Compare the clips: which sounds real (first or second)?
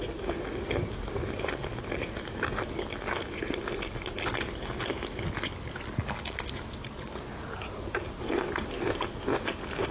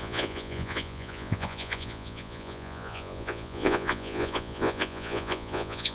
first